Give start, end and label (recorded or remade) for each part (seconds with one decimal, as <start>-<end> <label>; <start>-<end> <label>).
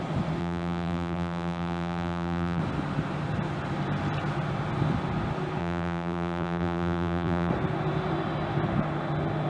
0.0-0.4 recorded; 0.4-2.6 remade; 2.6-5.6 recorded; 5.6-7.5 remade; 7.5-9.5 recorded